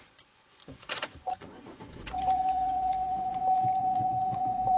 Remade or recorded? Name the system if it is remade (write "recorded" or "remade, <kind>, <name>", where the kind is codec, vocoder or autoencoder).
remade, vocoder, Vocos